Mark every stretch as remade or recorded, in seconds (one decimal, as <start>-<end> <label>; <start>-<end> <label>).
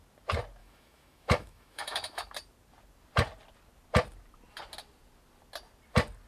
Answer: 0.0-0.6 recorded; 0.6-2.3 remade; 2.3-6.3 recorded